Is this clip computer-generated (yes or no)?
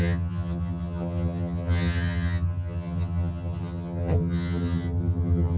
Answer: yes